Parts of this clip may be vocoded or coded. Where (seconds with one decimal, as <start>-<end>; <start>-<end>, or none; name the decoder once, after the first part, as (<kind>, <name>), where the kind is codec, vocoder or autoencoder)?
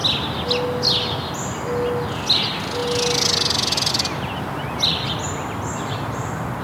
none